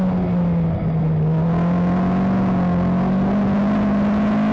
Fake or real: real